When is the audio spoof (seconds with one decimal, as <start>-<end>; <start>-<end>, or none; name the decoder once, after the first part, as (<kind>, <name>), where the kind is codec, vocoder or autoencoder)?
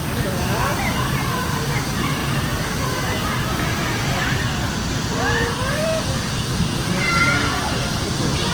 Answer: 0.0-0.7 (vocoder, BigVGAN v2); 1.4-8.5